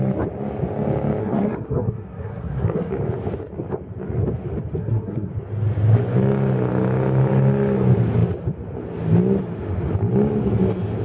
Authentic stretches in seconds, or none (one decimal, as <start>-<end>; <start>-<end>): 0.0-1.2; 2.9-4.8; 5.3-11.0